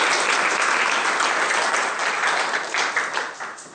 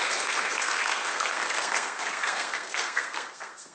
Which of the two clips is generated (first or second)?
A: second